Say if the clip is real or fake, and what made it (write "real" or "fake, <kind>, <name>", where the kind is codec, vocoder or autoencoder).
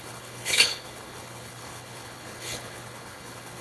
fake, codec, HILCodec